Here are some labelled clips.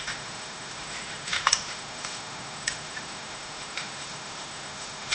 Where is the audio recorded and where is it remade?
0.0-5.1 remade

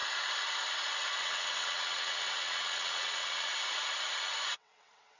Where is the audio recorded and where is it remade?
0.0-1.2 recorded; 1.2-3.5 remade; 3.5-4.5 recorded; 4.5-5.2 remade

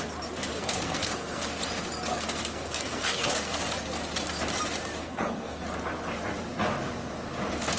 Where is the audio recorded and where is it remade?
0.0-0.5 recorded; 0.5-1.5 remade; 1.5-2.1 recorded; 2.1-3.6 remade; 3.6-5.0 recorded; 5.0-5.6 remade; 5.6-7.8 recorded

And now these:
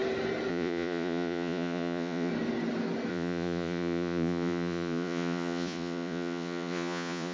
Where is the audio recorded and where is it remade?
0.0-0.5 recorded; 0.5-2.3 remade; 2.3-3.1 recorded; 3.1-7.3 remade